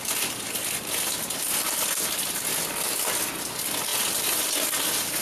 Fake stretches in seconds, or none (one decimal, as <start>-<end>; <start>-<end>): none